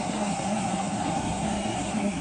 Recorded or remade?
remade